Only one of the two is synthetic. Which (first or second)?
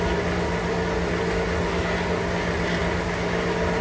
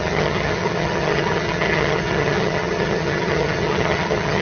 second